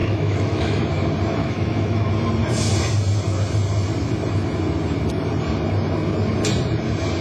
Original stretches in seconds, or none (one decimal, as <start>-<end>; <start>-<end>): 0.8-1.4; 2.1-7.2